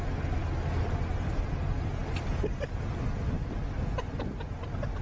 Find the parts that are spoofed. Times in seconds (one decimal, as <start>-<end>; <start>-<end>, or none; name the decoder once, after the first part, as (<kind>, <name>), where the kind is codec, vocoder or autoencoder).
none